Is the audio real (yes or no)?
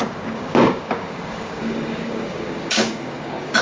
no